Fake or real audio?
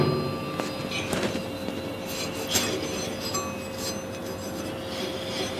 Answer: real